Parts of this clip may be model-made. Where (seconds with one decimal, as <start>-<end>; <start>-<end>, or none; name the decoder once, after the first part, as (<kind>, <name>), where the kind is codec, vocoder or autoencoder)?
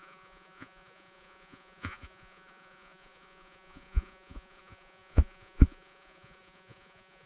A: 0.0-7.3 (vocoder, Vocos)